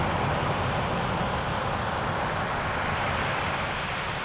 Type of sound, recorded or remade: recorded